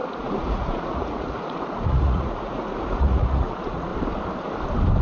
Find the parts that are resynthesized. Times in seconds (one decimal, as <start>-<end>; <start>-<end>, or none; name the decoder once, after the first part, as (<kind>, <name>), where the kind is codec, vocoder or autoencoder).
0.0-3.9 (vocoder, Vocos)